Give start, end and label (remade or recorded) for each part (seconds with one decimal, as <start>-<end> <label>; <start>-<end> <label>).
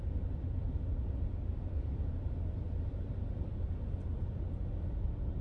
0.0-0.7 remade; 0.7-1.5 recorded; 1.5-3.5 remade; 3.5-5.4 recorded